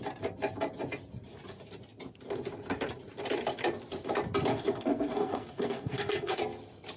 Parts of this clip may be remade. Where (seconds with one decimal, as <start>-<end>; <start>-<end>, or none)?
4.5-6.4

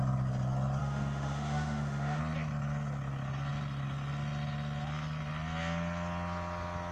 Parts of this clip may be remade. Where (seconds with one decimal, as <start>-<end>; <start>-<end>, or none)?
0.8-2.2

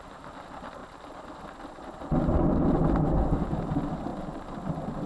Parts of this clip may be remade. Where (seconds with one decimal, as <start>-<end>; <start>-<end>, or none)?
none

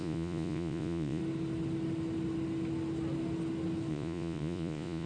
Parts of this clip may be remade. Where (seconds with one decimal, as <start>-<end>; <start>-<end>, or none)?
0.0-1.2; 3.9-5.1

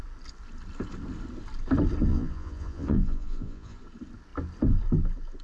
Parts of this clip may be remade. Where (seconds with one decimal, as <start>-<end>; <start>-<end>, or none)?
2.1-3.8